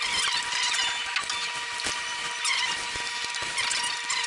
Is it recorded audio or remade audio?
recorded